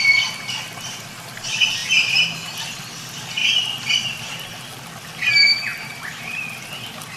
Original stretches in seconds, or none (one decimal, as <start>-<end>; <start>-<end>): 0.0-5.7; 6.4-7.2